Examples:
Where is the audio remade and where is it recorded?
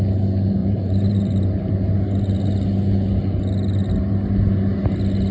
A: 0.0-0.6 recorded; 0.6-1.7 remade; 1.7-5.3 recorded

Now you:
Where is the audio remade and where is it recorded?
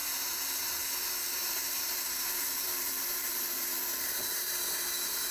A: 0.0-0.9 remade; 0.9-1.4 recorded; 1.4-4.6 remade; 4.6-5.3 recorded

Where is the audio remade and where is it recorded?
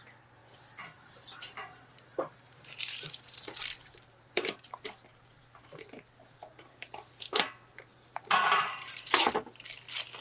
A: 0.0-0.4 recorded; 0.4-4.6 remade; 4.6-6.4 recorded; 6.4-7.0 remade; 7.0-7.9 recorded; 7.9-9.2 remade; 9.2-10.2 recorded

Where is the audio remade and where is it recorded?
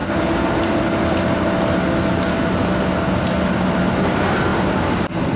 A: 0.0-4.5 recorded; 4.5-5.4 remade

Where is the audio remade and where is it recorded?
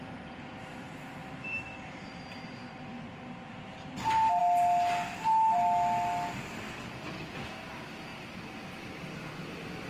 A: 0.0-1.2 recorded; 1.2-3.1 remade; 3.1-9.9 recorded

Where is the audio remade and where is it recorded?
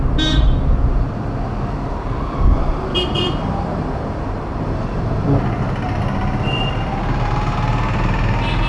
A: 0.0-2.9 recorded; 2.9-5.6 remade; 5.6-8.7 recorded